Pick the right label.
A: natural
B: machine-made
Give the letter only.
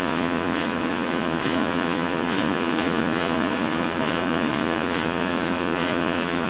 B